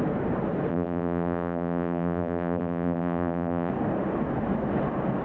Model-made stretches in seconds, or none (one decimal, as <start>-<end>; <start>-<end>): 0.7-3.7